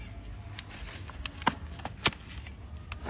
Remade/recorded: recorded